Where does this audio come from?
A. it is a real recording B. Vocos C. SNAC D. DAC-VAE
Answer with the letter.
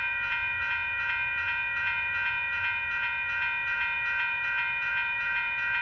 B